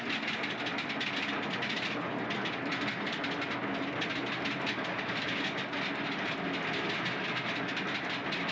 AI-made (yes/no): no